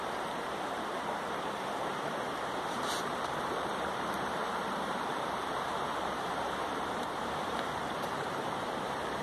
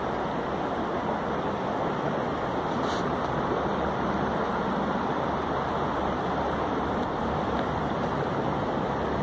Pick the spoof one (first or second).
first